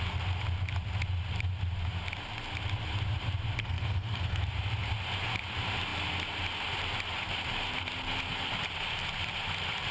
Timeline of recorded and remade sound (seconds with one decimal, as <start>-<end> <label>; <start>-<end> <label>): 0.0-3.6 recorded; 3.6-4.4 remade; 4.4-9.9 recorded